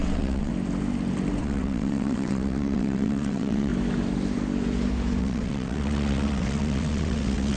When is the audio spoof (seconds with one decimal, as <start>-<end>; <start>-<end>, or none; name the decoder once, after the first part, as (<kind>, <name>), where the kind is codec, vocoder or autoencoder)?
0.0-0.5 (vocoder, WaveNeXt); 1.4-3.7; 5.2-7.6